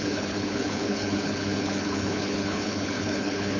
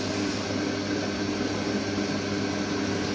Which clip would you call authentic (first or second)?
second